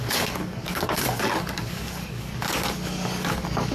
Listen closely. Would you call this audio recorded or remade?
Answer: remade